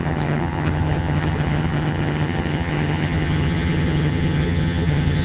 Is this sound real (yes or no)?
no